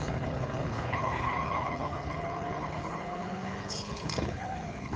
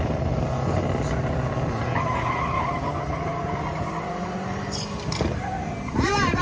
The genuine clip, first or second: second